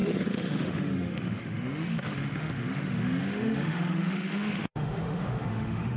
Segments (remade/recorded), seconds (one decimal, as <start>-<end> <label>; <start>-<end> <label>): 0.0-6.0 remade